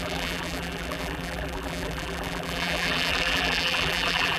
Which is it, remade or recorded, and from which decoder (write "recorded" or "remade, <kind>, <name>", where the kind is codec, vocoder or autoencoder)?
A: remade, vocoder, BigVGAN v2